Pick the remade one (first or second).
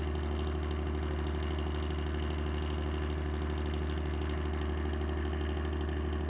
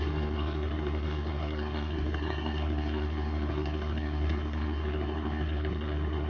second